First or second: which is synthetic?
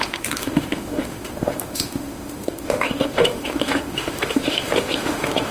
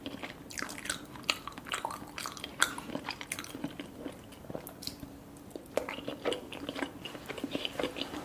first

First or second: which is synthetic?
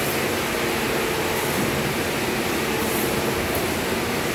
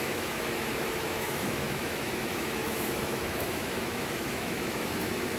second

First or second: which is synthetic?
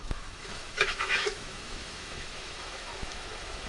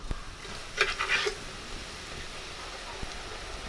first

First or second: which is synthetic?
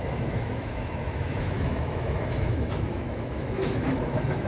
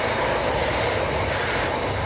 first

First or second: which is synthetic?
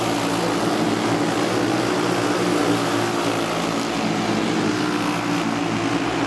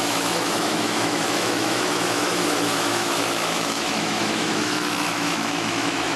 second